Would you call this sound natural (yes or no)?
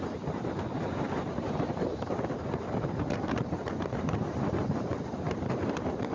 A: no